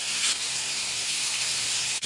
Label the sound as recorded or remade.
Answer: remade